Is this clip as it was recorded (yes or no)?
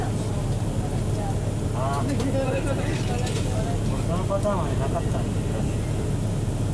yes